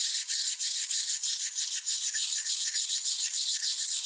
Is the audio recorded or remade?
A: remade